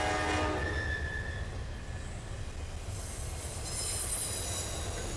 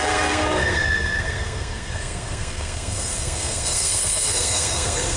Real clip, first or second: first